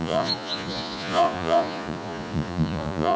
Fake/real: fake